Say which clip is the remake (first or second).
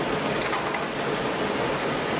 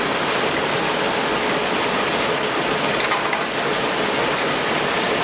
first